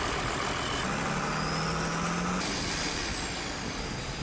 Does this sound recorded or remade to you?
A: recorded